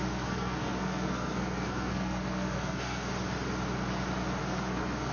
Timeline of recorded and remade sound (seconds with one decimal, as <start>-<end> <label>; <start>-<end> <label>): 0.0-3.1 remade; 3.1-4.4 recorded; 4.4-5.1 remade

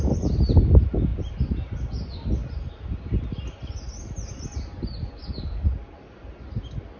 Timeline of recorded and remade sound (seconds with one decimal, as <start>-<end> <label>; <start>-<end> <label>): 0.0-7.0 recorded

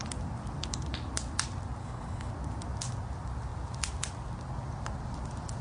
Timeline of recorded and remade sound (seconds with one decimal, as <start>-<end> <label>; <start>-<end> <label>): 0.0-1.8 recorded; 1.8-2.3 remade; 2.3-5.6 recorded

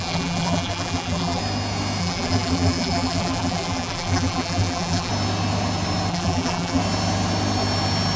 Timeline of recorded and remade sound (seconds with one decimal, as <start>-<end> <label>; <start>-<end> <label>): 0.0-1.4 remade; 1.4-2.0 recorded; 2.0-5.1 remade; 5.1-6.1 recorded; 6.1-6.8 remade; 6.8-8.2 recorded

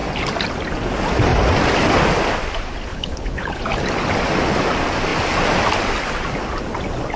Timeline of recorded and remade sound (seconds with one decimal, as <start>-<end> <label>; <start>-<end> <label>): 0.0-2.9 recorded; 2.9-3.6 remade; 3.6-7.2 recorded